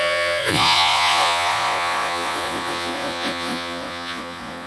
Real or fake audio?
fake